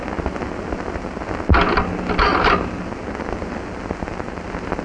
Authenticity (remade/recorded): recorded